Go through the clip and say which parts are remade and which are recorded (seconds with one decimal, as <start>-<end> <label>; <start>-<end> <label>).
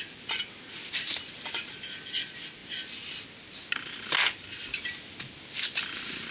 0.0-6.3 recorded